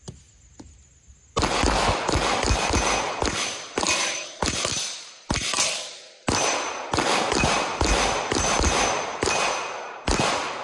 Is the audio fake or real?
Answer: real